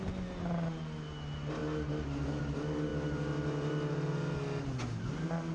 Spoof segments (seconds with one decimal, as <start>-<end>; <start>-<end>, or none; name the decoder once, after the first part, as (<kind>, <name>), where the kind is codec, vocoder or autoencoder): none